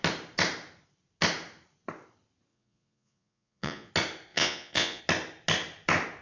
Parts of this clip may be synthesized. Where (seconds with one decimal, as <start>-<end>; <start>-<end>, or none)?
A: 2.5-3.9; 4.3-5.0